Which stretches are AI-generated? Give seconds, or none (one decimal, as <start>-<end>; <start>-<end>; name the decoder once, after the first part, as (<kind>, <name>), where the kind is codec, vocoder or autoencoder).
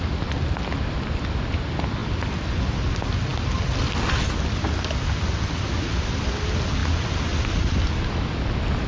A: none